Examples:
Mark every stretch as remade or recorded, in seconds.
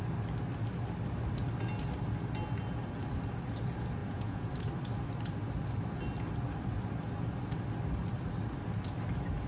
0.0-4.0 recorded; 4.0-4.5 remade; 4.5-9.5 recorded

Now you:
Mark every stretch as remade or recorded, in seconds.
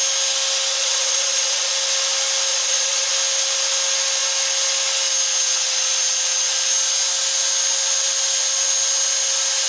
0.0-0.7 recorded; 0.7-1.7 remade; 1.7-2.5 recorded; 2.5-3.1 remade; 3.1-9.7 recorded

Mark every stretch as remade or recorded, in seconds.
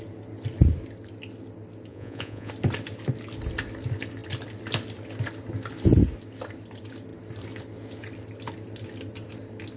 0.0-1.9 recorded; 1.9-2.5 remade; 2.5-9.8 recorded